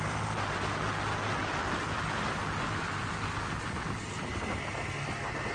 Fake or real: real